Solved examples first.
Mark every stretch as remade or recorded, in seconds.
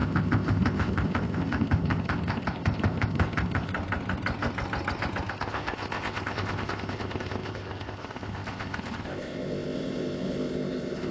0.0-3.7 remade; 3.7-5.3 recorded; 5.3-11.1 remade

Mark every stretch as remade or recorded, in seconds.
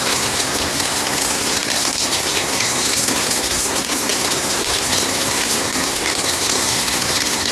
0.0-7.5 remade